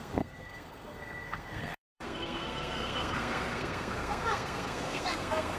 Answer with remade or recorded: remade